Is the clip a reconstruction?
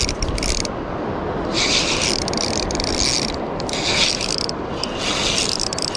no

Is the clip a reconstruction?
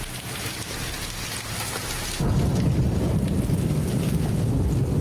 no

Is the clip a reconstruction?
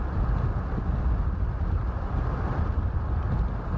no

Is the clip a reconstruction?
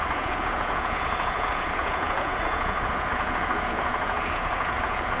yes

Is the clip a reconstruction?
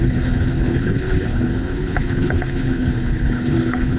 yes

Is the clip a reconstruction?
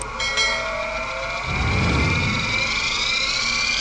no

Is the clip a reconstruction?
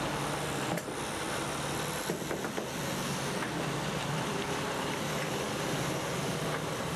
no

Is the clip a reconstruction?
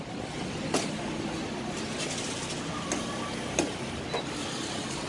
no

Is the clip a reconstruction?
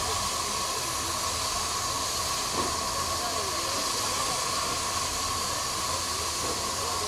no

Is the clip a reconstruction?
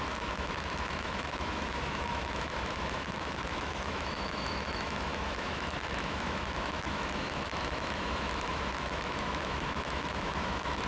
yes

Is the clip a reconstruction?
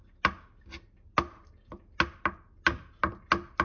no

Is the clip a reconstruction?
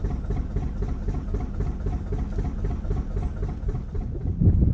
no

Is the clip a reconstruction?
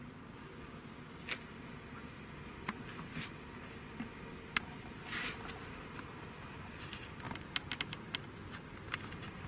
no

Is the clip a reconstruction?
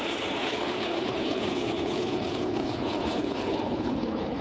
yes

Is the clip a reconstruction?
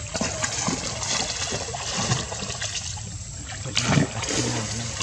no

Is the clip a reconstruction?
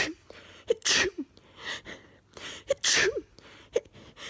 no